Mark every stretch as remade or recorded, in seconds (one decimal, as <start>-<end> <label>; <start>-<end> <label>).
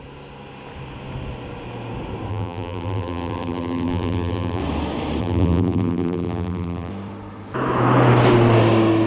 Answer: 0.0-2.3 recorded; 2.3-4.6 remade; 4.6-5.2 recorded; 5.2-6.9 remade; 6.9-9.1 recorded